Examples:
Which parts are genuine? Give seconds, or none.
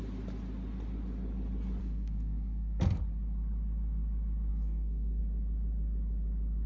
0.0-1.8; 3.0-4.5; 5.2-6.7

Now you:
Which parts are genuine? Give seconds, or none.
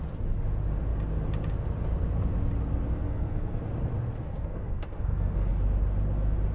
0.0-3.0; 3.6-4.2; 5.5-6.5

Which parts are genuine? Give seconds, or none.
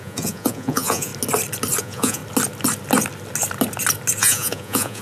1.1-1.8; 2.2-4.2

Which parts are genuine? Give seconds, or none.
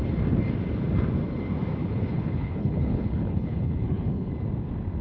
0.0-1.8; 4.3-5.0